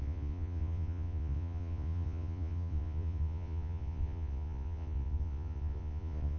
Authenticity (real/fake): fake